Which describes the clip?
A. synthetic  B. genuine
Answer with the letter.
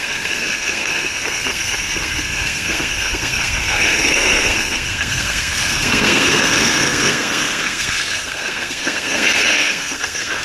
A